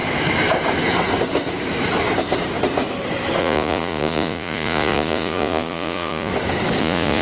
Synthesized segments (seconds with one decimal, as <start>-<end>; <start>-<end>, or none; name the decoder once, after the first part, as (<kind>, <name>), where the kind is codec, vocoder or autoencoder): 3.4-6.3 (vocoder, Vocos); 6.8-7.2